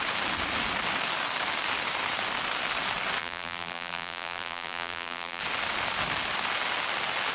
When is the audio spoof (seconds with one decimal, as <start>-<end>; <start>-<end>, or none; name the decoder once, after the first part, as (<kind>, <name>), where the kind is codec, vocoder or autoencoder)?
3.2-5.4 (vocoder, BigVGAN v2)